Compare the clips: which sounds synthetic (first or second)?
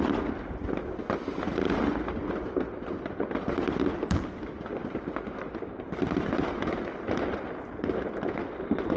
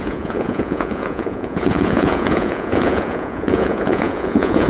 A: second